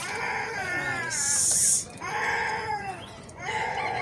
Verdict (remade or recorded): remade